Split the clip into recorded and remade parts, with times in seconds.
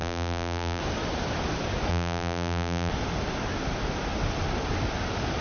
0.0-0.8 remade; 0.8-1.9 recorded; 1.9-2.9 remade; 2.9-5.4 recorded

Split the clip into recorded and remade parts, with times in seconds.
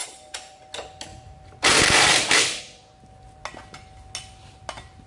0.0-0.6 remade; 0.6-1.1 recorded; 1.1-2.6 remade; 2.6-5.1 recorded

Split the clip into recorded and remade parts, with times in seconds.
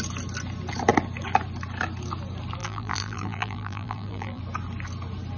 0.0-2.6 recorded; 2.6-4.4 remade; 4.4-5.4 recorded